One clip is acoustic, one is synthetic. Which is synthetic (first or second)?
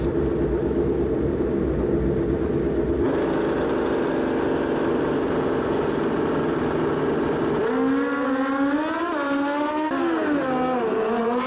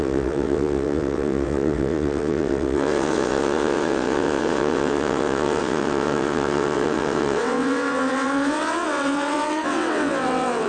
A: second